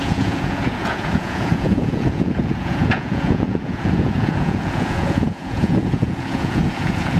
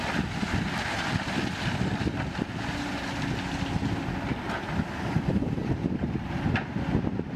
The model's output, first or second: first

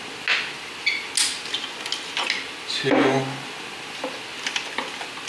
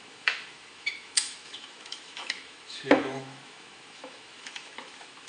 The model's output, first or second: second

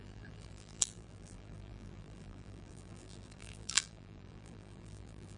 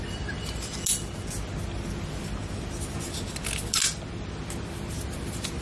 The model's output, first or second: first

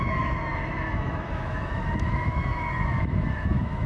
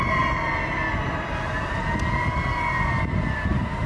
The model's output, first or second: first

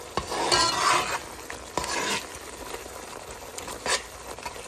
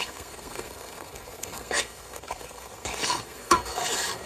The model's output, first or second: second